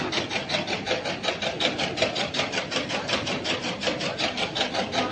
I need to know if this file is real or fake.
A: real